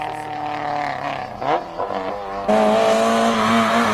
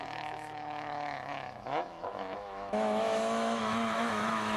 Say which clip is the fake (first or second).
second